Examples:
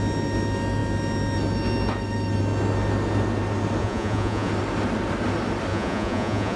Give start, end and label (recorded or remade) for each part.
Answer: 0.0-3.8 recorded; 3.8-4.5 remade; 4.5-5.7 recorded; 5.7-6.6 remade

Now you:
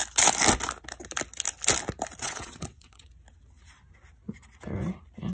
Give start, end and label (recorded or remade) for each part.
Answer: 0.0-2.2 recorded; 2.2-3.1 remade; 3.1-5.3 recorded

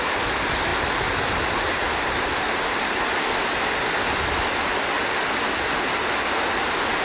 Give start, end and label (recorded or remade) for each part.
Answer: 0.0-7.0 recorded

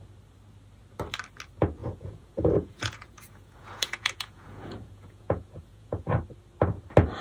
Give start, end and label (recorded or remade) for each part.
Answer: 0.0-1.8 recorded; 1.8-6.1 remade; 6.1-7.2 recorded

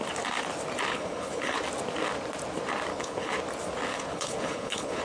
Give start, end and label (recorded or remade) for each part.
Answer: 0.0-0.9 recorded; 0.9-1.6 remade; 1.6-2.9 recorded; 2.9-3.4 remade; 3.4-3.9 recorded; 3.9-5.0 remade